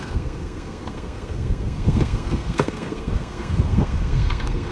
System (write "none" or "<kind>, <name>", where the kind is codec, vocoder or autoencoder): codec, SNAC